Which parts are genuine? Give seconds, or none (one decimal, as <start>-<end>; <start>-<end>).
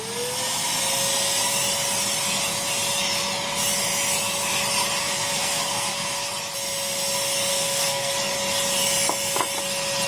0.0-5.0; 6.3-7.5; 8.1-10.1